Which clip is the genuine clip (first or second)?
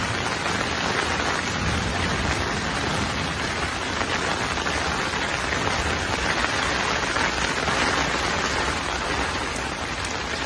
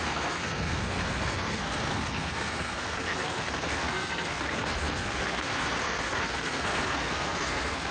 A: first